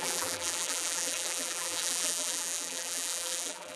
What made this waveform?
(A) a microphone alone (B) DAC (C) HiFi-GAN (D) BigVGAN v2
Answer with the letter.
D